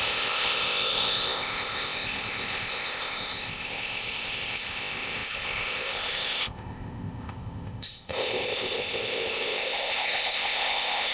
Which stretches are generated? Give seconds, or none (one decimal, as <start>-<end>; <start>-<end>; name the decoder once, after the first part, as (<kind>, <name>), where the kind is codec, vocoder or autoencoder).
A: 0.0-11.1 (codec, ZipCodec)